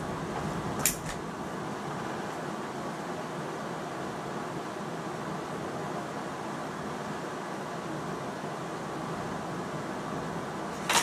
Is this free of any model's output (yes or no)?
yes